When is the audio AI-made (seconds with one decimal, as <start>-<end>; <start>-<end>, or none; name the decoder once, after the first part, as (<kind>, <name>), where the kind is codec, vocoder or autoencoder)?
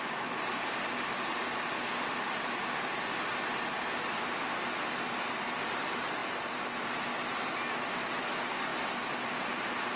none